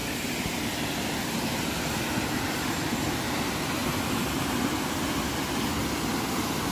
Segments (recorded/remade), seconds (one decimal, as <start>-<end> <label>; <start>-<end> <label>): 0.0-6.7 recorded